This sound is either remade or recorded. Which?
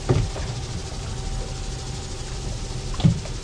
recorded